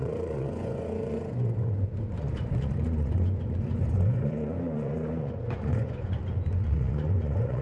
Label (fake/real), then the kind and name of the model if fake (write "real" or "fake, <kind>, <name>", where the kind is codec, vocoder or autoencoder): fake, vocoder, Vocos